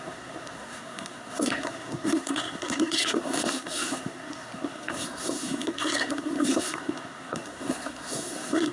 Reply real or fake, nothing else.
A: fake